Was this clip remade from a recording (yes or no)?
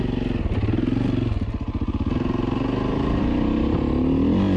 no